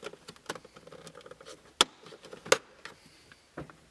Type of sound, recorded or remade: recorded